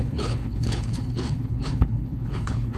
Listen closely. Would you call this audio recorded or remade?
remade